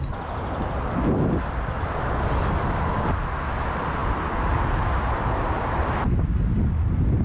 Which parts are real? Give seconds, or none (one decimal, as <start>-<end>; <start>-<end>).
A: 0.0-7.2